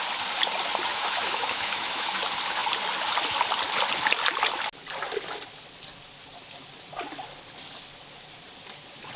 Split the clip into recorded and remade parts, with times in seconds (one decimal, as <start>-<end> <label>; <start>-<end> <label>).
0.0-0.9 recorded; 0.9-2.2 remade; 2.2-9.2 recorded